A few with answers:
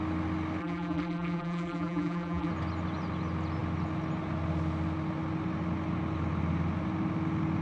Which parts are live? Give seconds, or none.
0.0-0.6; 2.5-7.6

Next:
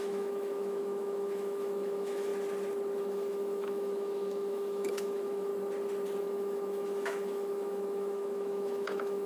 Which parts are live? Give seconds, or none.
2.3-3.0; 5.5-6.2

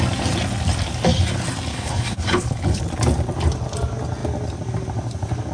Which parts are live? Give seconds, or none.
0.0-1.7; 2.8-5.5

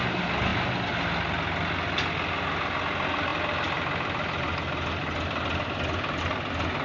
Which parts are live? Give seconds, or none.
0.0-6.8